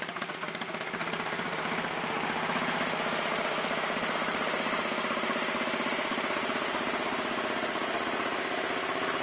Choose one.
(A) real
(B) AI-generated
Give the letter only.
A